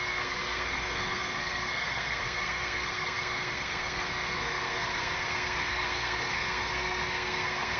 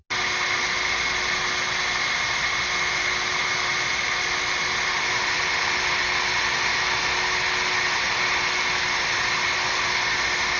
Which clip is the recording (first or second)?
second